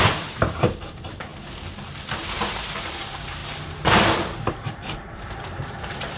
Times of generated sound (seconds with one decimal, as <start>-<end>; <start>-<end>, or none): 0.0-1.3; 2.5-3.4; 4.5-6.2